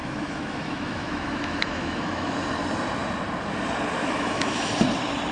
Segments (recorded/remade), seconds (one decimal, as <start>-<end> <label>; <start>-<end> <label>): 0.0-2.3 remade; 2.3-4.0 recorded; 4.0-4.7 remade; 4.7-5.3 recorded